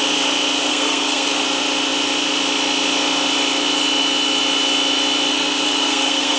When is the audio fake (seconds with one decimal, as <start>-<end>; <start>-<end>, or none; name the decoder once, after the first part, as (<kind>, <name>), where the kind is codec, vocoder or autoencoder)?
0.7-1.3 (codec, SNAC); 5.3-6.4